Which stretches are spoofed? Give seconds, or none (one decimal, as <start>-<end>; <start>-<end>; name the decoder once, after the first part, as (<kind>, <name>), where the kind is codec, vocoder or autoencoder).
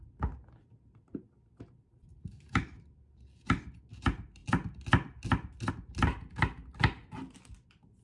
none